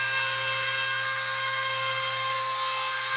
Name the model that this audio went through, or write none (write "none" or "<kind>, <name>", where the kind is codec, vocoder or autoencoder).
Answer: codec, SNAC